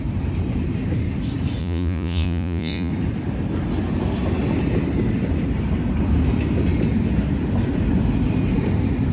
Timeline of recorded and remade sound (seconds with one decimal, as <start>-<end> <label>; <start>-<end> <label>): 0.0-1.6 recorded; 1.6-2.9 remade; 2.9-9.1 recorded